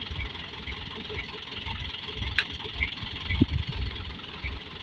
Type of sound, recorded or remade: recorded